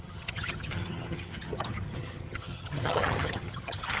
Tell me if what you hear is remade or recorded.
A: remade